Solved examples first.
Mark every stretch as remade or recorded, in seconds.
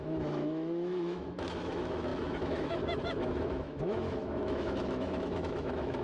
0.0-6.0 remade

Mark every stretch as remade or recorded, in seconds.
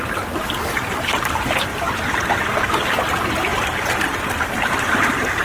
0.0-5.4 recorded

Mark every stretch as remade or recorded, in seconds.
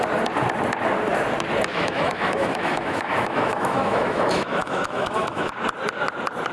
0.0-1.7 recorded; 1.7-5.5 remade; 5.5-6.5 recorded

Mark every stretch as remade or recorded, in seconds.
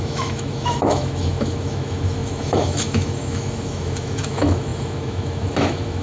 0.0-6.0 remade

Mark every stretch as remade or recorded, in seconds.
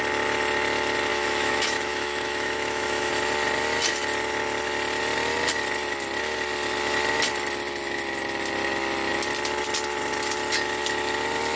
0.0-1.1 recorded; 1.1-3.1 remade; 3.1-11.6 recorded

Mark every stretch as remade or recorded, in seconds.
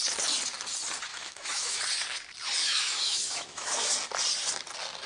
0.0-1.1 recorded; 1.1-1.8 remade; 1.8-2.6 recorded; 2.6-3.9 remade; 3.9-5.1 recorded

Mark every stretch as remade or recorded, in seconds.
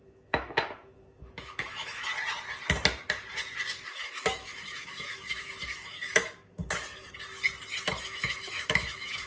0.0-2.1 remade; 2.1-3.7 recorded; 3.7-6.6 remade; 6.6-8.0 recorded; 8.0-9.3 remade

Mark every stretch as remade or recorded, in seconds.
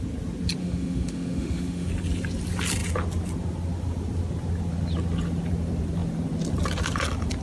0.0-0.6 recorded; 0.6-1.9 remade; 1.9-7.4 recorded